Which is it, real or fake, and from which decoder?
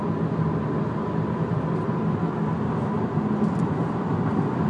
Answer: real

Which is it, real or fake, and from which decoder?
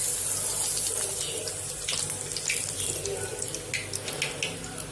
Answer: real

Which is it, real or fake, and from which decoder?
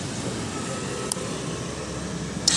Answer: real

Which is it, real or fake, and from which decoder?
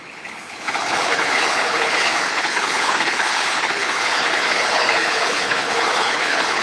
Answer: fake, codec, HILCodec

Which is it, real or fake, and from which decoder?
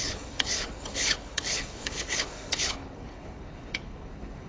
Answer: fake, codec, HILCodec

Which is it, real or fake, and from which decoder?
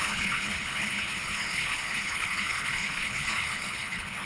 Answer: fake, codec, HILCodec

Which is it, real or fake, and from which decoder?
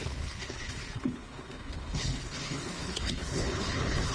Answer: fake, codec, HILCodec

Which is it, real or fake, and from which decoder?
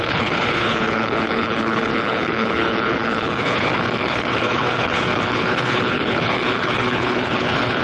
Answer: fake, codec, HILCodec